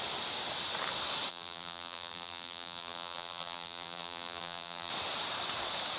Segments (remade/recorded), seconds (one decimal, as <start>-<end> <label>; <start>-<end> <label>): 0.0-1.3 recorded; 1.3-4.9 remade; 4.9-6.0 recorded